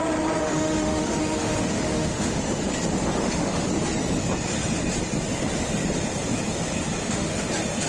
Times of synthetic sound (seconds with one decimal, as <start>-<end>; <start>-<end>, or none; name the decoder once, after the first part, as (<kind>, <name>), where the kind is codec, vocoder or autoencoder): 0.4-2.4 (autoencoder, DAC-VAE); 3.1-3.7; 7.0-7.5